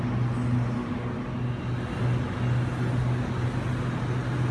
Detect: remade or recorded recorded